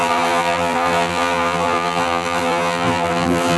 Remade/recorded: remade